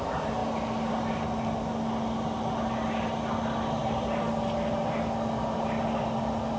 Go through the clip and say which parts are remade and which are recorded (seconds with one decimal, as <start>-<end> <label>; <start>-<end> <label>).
0.0-6.6 recorded